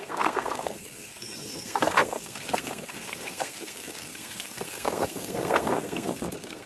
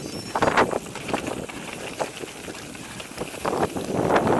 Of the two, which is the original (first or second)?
second